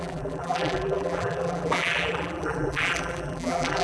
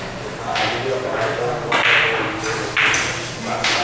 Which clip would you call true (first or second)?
second